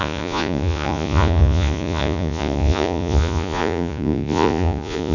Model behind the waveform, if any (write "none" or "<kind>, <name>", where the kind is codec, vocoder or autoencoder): vocoder, Vocos